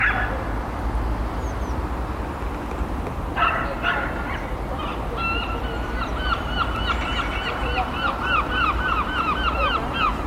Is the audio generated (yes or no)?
no